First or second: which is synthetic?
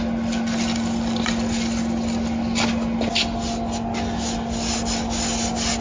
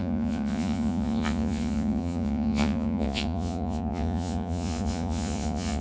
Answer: second